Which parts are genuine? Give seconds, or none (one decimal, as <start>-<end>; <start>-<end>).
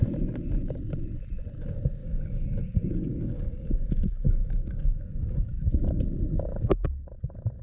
0.0-2.0; 6.0-7.6